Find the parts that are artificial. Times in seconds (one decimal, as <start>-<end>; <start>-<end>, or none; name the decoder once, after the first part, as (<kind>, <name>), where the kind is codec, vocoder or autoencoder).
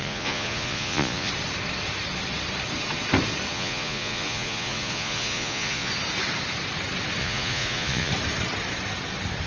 0.0-1.3 (vocoder, Vocos); 3.5-5.9; 7.2-8.1